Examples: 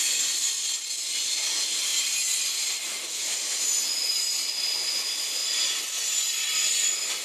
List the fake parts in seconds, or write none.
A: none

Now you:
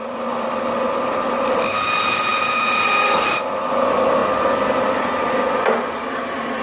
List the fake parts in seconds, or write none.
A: 0.0-2.3 (vocoder, BigVGAN v2); 3.2-6.6

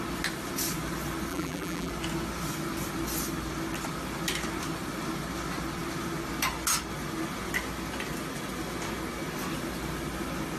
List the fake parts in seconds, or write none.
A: 1.3-1.9 (vocoder, BigVGAN v2)

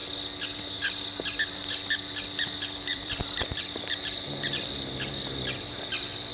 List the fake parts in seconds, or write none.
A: 2.9-3.9 (vocoder, BigVGAN v2)